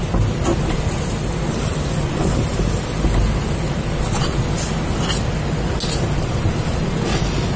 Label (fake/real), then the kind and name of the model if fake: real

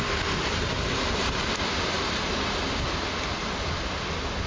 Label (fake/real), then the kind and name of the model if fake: real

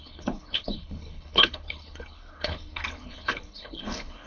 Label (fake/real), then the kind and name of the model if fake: fake, codec, HILCodec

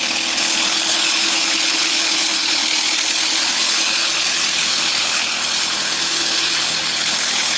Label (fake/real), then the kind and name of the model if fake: fake, codec, HILCodec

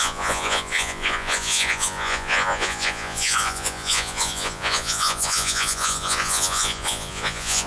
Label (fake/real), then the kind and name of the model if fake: fake, vocoder, Vocos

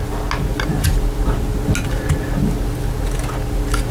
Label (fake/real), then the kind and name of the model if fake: real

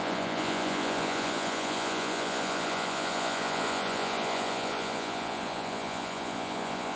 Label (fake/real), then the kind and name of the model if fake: fake, vocoder, Vocos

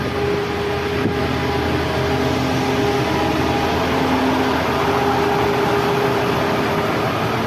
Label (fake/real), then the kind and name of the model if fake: real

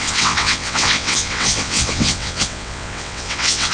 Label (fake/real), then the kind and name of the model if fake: fake, vocoder, WaveNeXt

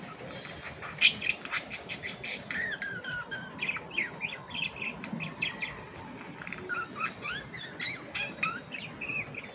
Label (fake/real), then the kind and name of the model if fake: real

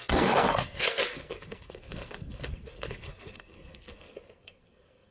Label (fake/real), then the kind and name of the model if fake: fake, codec, SNAC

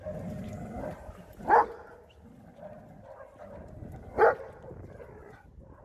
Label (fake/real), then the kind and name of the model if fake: real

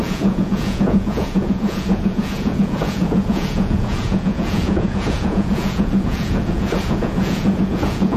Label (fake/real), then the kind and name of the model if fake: fake, vocoder, Vocos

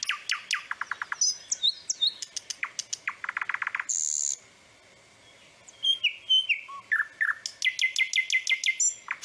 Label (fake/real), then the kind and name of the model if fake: real